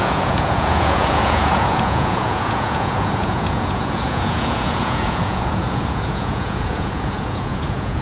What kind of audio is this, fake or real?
fake